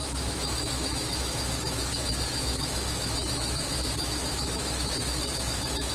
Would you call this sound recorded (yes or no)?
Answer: no